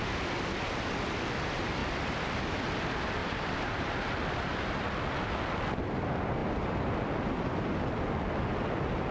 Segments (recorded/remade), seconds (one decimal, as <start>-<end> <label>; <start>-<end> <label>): 0.0-1.8 recorded; 1.8-2.4 remade; 2.4-3.2 recorded; 3.2-5.4 remade; 5.4-6.4 recorded; 6.4-7.1 remade; 7.1-9.1 recorded